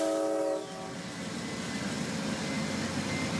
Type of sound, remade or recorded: recorded